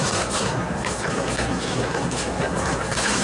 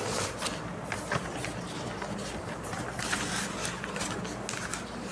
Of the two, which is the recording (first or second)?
second